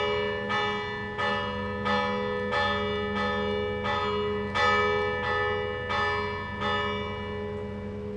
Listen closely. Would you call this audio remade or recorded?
recorded